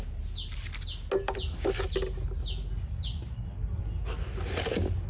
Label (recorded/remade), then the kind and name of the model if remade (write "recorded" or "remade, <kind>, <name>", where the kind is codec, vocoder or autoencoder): recorded